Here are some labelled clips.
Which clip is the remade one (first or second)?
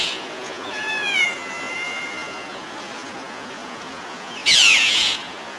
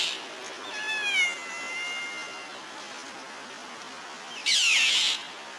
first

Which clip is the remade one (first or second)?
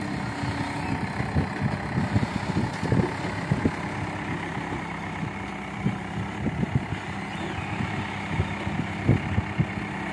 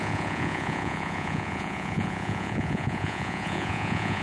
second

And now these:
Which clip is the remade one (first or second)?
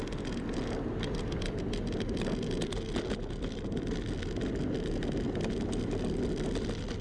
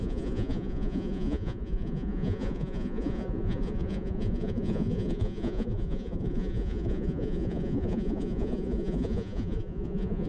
second